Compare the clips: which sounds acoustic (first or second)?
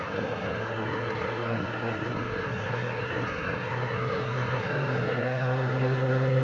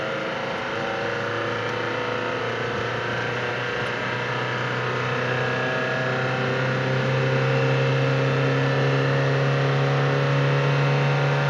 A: second